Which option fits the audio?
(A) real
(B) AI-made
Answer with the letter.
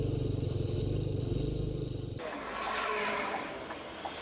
A